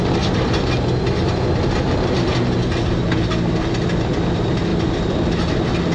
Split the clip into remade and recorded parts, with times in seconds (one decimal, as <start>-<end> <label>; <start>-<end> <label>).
0.0-4.7 recorded; 4.7-5.2 remade; 5.2-5.9 recorded